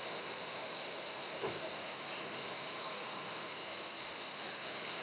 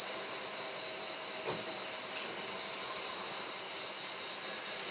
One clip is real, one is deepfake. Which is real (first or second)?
second